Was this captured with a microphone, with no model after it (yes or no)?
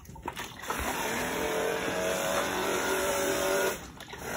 no